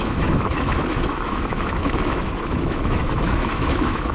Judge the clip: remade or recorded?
remade